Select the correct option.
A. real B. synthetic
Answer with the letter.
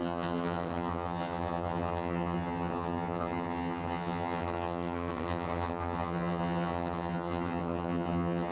B